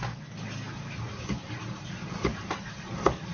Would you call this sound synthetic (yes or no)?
no